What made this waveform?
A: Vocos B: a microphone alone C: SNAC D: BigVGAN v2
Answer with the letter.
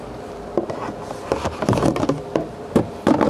B